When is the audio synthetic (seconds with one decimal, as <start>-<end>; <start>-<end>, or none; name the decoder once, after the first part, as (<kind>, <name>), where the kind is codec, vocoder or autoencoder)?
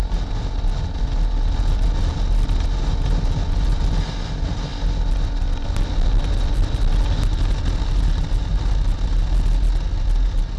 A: none